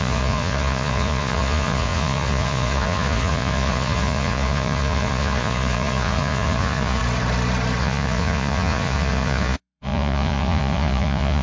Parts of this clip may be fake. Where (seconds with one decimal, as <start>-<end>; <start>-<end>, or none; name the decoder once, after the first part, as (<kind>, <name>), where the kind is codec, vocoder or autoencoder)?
0.0-7.0 (vocoder, Vocos); 7.8-11.4